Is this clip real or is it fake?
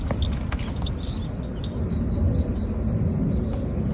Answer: real